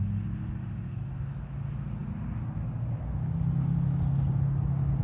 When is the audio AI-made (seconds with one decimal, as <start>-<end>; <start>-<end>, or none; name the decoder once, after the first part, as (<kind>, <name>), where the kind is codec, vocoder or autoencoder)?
none